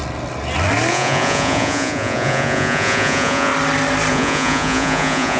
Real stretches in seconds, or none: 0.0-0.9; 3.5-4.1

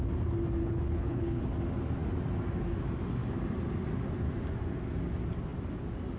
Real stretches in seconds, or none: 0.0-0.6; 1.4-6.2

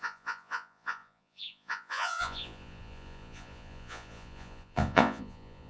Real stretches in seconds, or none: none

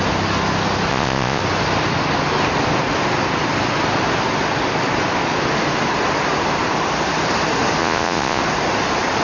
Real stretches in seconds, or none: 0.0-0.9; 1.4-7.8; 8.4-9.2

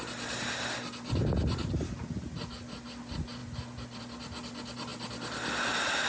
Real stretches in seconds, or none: 0.0-6.1

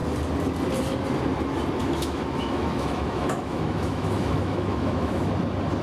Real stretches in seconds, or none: 0.0-1.8; 5.3-5.8